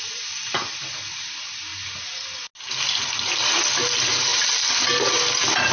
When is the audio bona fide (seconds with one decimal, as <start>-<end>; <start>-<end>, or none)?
0.0-5.7